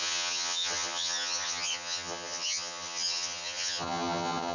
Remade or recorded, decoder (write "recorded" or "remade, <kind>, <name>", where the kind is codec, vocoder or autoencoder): remade, vocoder, HiFi-GAN